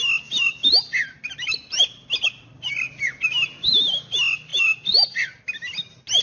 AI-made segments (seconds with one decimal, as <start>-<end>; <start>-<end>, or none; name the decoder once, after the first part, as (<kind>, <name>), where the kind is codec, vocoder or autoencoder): 4.5-5.4 (vocoder, BigVGAN v2)